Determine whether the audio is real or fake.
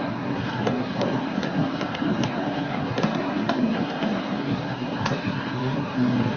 fake